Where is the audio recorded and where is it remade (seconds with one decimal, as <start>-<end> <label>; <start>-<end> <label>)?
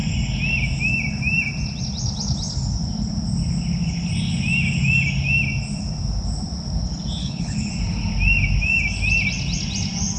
0.0-7.2 recorded; 7.2-7.7 remade; 7.7-10.2 recorded